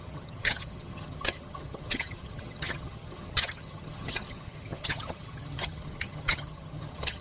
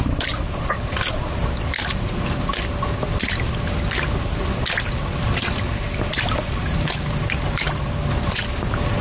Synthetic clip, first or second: first